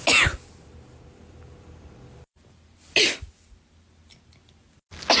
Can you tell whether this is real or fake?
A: real